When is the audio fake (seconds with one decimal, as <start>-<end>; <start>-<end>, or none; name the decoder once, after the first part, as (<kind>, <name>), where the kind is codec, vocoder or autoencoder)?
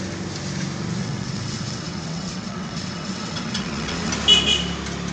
1.0-4.1 (vocoder, WaveNeXt)